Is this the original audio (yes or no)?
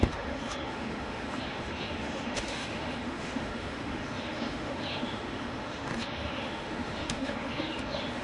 no